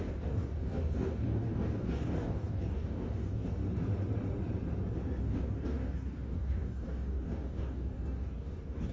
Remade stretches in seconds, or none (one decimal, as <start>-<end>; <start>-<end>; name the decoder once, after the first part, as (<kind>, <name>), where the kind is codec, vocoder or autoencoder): 0.0-3.6 (codec, DAC); 5.2-8.9